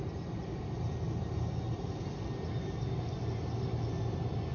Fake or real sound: real